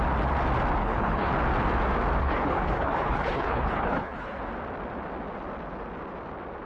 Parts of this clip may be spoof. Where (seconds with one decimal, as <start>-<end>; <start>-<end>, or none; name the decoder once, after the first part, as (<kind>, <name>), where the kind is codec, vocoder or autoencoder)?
0.8-1.3 (codec, HILCodec); 2.2-4.4